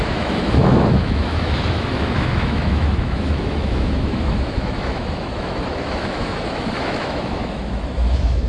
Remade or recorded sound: remade